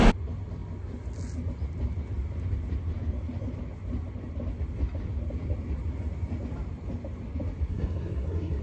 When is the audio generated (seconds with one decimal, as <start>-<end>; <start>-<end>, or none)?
7.7-8.6

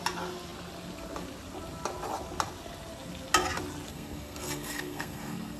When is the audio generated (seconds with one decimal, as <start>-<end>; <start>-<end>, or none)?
3.9-5.6

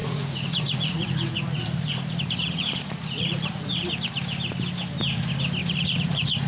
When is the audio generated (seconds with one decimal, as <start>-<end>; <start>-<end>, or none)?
0.0-3.9; 5.6-6.5

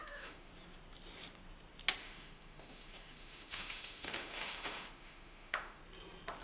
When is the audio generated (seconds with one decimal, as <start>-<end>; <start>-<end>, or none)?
0.0-0.5; 2.0-5.8

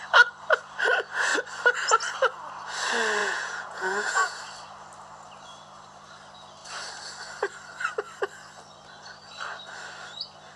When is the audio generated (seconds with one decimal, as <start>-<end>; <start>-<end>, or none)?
3.2-4.4